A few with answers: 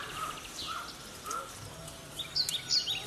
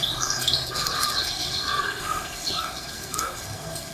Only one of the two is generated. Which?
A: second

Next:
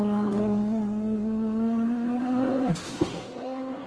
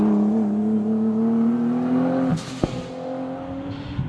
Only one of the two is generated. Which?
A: first